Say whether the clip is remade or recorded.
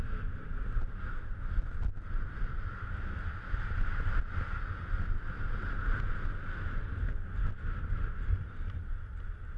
recorded